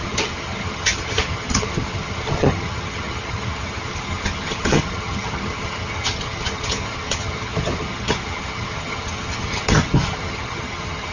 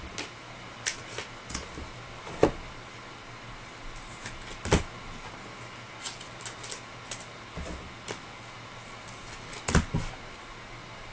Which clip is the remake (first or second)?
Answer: first